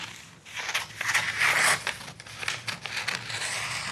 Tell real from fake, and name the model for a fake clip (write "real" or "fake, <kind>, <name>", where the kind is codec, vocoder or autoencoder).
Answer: fake, vocoder, BigVGAN v2